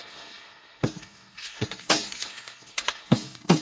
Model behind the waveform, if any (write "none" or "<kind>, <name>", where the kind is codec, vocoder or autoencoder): codec, SNAC